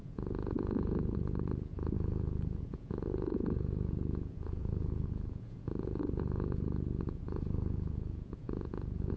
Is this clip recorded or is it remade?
remade